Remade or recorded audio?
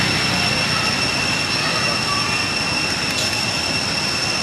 recorded